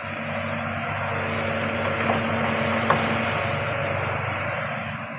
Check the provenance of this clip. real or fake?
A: real